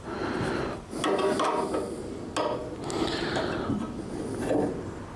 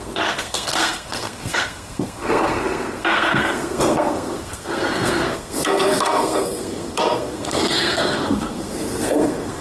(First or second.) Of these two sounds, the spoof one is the second